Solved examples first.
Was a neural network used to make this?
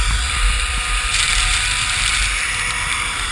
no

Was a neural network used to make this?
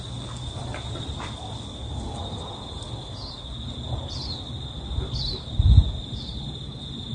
no